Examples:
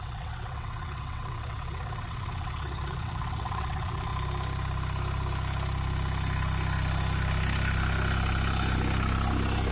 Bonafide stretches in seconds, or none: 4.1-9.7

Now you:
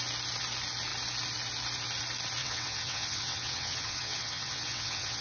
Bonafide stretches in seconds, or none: 0.0-2.4

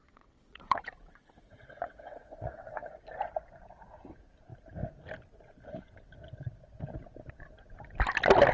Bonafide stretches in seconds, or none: 2.9-8.5

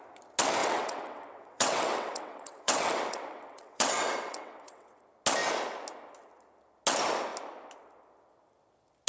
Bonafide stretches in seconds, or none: 0.0-0.6; 5.0-9.1